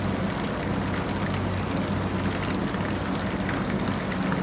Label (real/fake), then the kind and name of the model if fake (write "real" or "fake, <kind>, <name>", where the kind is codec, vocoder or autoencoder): real